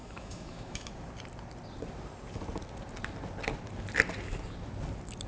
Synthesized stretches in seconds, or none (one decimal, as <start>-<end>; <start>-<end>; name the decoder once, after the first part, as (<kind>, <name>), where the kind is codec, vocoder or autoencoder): 0.0-0.9 (autoencoder, DAC-VAE)